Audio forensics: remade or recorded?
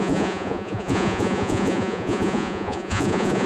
remade